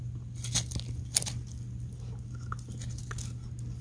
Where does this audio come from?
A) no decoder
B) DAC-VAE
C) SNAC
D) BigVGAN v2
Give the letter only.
A